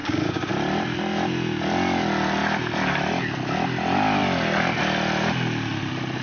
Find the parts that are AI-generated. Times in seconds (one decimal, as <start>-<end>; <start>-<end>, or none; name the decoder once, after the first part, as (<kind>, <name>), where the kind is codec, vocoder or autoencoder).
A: 0.0-0.5 (codec, DAC)